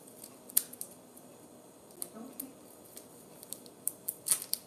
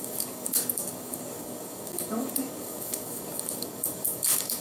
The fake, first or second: second